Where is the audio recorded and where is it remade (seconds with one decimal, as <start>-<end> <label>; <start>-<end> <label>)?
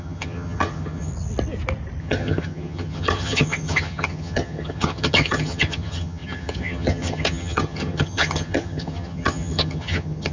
0.0-1.1 remade; 1.1-2.0 recorded; 2.0-10.3 remade